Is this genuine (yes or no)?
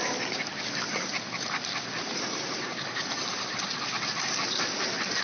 yes